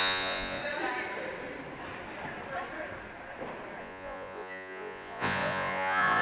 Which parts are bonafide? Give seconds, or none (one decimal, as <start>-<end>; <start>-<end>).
0.6-3.8